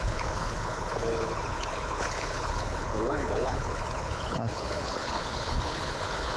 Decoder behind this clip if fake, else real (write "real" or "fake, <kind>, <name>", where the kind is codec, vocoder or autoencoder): fake, codec, HILCodec